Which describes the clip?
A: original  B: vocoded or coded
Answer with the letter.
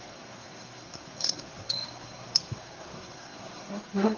B